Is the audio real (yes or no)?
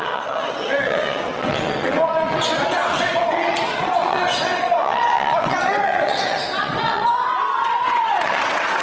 no